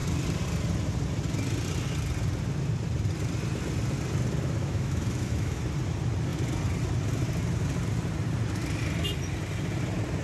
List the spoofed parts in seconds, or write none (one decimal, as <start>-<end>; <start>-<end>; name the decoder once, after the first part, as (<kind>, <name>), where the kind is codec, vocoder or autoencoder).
4.6-5.6 (autoencoder, DAC-VAE)